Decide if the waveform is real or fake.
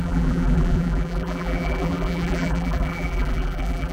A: fake